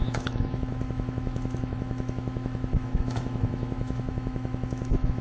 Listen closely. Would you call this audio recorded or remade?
remade